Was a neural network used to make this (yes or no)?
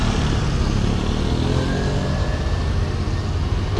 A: no